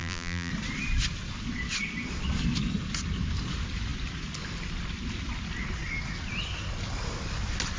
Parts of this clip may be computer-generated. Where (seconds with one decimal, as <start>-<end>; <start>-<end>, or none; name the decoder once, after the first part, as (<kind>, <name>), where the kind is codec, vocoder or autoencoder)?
0.0-0.5 (vocoder, BigVGAN v2)